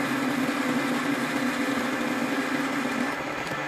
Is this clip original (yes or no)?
yes